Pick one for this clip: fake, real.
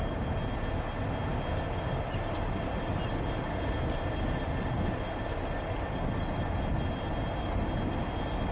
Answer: real